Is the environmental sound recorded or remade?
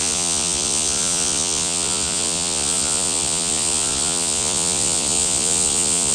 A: remade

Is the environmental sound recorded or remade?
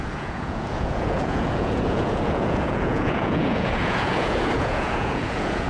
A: remade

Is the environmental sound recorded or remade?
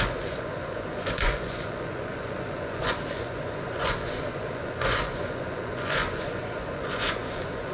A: remade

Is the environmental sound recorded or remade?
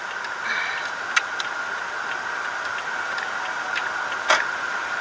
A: recorded